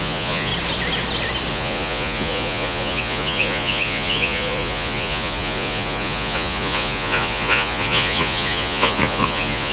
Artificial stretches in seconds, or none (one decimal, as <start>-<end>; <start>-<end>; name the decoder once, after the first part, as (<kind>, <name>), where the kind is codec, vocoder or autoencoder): 0.0-0.5 (vocoder, Vocos); 1.5-9.7